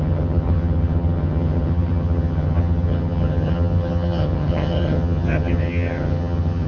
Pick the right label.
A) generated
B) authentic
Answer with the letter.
A